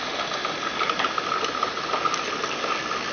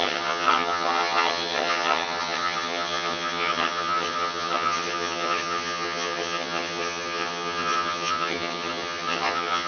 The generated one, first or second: second